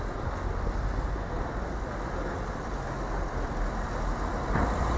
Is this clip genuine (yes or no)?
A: yes